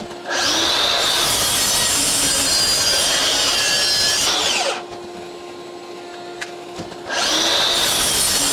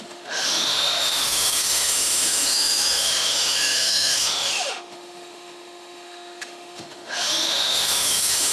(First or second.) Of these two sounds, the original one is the first